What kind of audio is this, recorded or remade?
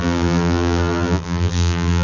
remade